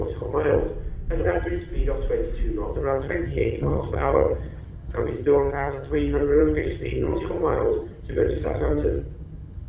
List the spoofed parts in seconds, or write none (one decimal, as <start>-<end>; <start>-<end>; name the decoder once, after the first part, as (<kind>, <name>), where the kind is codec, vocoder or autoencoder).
0.0-0.6 (vocoder, HiFi-GAN); 1.2-1.7; 2.7-9.7